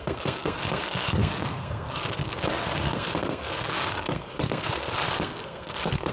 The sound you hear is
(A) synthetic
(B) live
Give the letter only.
A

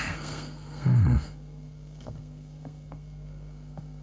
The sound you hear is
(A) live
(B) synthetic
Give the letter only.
B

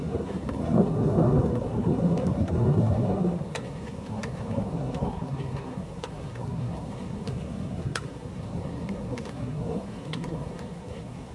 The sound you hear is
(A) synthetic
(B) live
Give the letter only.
A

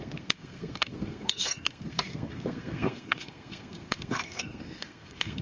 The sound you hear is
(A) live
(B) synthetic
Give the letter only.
B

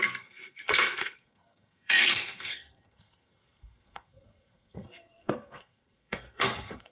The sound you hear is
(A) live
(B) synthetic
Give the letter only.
B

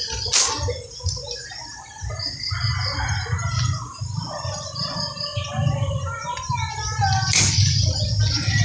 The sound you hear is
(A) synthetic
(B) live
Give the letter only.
B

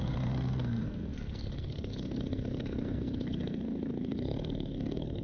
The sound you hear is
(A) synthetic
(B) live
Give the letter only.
A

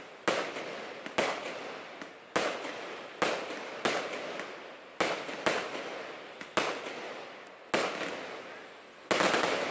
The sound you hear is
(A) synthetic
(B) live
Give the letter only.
B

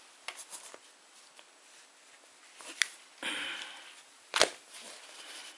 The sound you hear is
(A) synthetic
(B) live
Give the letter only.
B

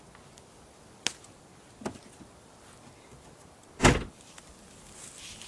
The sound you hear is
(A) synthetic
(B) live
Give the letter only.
B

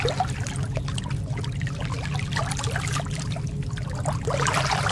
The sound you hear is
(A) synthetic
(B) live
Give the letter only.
B